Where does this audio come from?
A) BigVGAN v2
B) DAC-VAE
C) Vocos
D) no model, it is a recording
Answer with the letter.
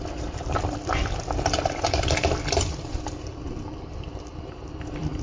A